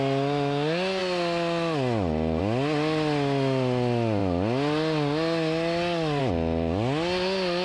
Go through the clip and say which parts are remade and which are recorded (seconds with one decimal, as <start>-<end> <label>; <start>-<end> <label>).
0.0-7.6 recorded